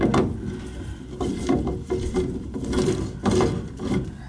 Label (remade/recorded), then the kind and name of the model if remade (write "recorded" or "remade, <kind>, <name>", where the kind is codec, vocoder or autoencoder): recorded